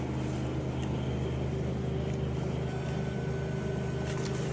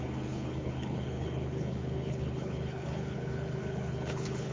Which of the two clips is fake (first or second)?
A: second